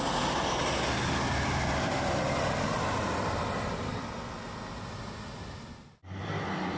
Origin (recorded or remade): recorded